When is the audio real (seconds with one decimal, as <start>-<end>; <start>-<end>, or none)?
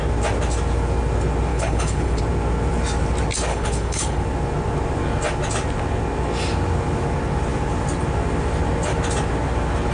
0.0-1.5; 2.2-3.5; 4.2-9.9